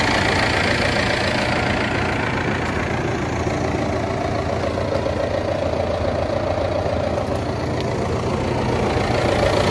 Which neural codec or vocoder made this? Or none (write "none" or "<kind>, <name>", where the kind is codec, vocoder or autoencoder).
none